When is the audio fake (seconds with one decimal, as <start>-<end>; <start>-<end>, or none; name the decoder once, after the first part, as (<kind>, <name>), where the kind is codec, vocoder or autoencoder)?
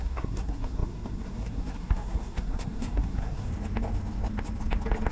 0.0-3.5 (codec, SNAC)